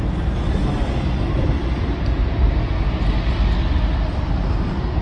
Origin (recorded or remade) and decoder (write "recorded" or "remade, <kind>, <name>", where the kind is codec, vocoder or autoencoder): recorded